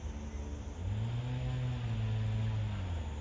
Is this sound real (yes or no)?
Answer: yes